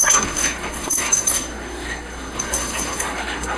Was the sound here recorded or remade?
remade